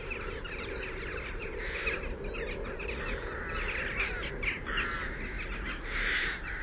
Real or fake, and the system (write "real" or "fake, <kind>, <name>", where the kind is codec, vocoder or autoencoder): real